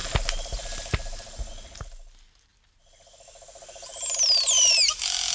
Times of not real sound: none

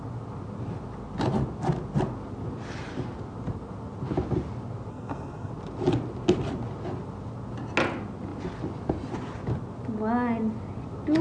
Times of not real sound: 4.9-5.5